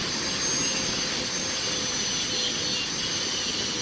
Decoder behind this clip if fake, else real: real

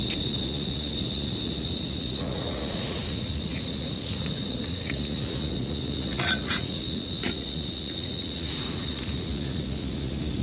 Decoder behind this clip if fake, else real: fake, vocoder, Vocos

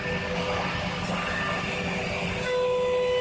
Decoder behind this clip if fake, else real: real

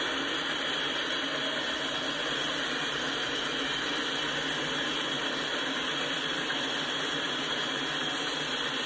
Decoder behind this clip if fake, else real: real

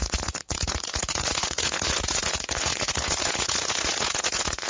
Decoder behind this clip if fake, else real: fake, vocoder, Vocos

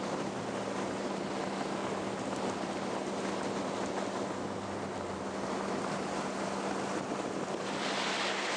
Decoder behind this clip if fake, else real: real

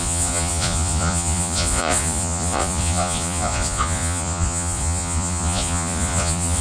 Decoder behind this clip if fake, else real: fake, vocoder, Vocos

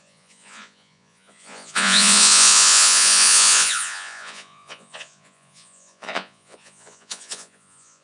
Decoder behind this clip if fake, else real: fake, vocoder, Vocos